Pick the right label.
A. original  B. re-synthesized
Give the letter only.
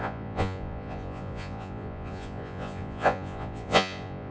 B